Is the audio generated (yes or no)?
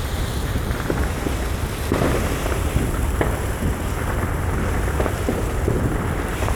yes